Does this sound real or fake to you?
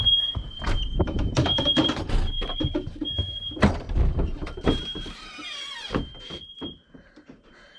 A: fake